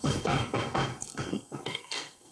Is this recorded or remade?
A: remade